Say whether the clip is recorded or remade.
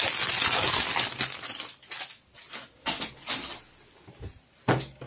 recorded